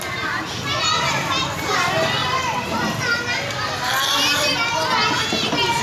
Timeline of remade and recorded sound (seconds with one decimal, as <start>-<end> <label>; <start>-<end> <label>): 0.0-2.2 recorded; 2.2-3.0 remade; 3.0-5.8 recorded